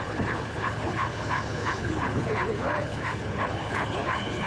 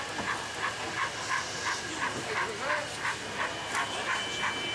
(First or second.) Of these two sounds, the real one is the second